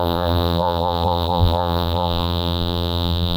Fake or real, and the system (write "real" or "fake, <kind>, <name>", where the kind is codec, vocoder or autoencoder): fake, vocoder, BigVGAN v2